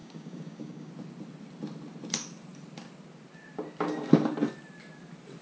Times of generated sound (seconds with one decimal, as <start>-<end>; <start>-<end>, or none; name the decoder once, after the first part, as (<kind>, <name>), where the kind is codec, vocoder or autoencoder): 0.0-0.9 (codec, DAC)